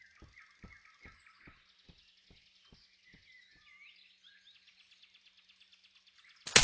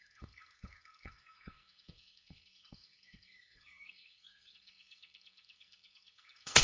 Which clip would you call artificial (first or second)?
second